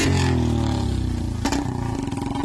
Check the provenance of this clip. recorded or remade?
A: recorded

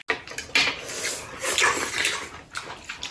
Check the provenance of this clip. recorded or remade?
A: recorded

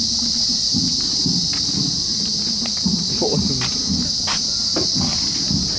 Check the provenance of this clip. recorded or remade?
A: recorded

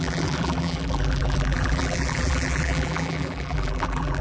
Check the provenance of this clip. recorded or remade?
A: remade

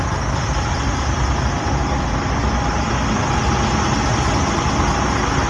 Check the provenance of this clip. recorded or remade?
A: recorded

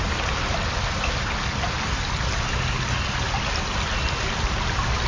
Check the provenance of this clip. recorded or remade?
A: recorded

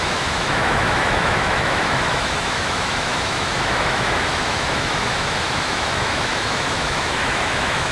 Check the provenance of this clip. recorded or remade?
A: remade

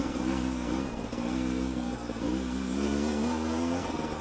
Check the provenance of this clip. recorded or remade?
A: remade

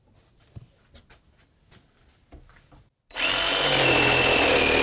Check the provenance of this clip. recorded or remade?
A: recorded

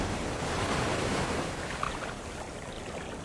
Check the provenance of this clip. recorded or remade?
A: recorded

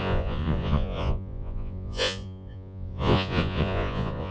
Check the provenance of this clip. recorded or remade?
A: remade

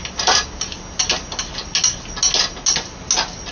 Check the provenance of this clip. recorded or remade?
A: recorded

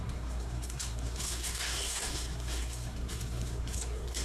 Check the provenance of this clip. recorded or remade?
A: remade